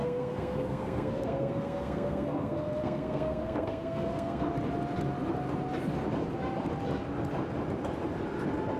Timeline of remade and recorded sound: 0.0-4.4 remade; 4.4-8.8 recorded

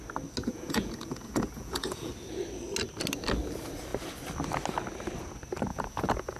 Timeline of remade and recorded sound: 0.0-0.4 recorded; 0.4-2.1 remade; 2.1-5.7 recorded; 5.7-6.4 remade

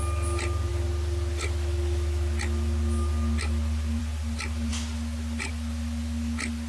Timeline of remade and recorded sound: 0.0-6.7 recorded

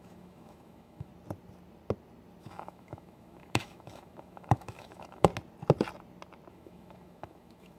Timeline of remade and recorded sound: 0.0-1.1 remade; 1.1-2.4 recorded; 2.4-5.3 remade; 5.3-6.5 recorded; 6.5-7.8 remade